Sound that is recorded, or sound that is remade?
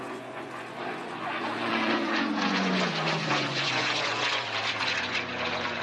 remade